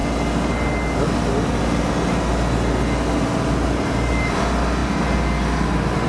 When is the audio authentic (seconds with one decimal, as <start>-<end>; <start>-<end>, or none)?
0.0-6.1